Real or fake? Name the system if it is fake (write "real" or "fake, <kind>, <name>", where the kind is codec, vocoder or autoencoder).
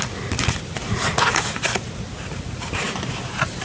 real